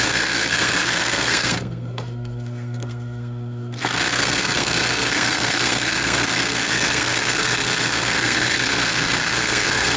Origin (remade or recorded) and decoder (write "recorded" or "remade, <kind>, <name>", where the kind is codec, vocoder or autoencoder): remade, codec, SNAC